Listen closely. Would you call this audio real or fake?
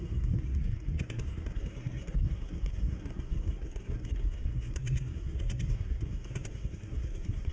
fake